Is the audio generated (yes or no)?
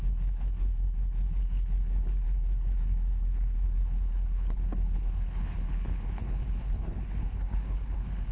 yes